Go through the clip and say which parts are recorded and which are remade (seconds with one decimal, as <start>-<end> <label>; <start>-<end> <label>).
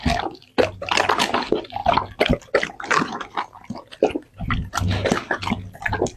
0.0-6.2 recorded